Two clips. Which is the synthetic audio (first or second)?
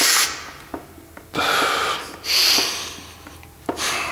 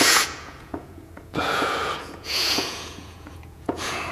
second